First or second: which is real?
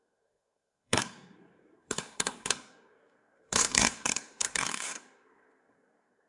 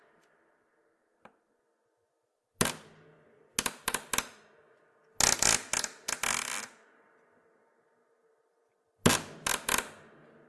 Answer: second